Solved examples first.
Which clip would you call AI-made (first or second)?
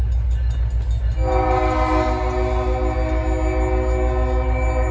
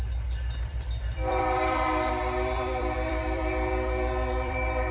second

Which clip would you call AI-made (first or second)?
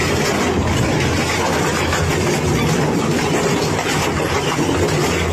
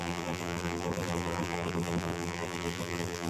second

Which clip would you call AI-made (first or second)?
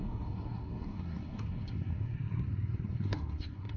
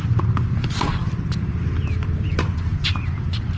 first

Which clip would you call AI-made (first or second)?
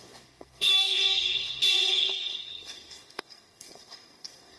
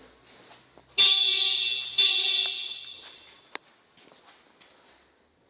first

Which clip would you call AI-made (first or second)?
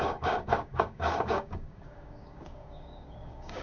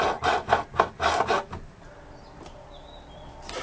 first